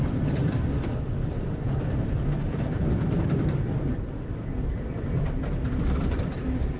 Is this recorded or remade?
remade